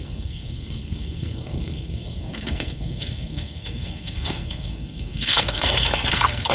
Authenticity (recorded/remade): remade